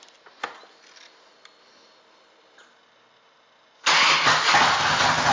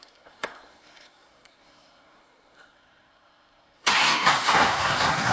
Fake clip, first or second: second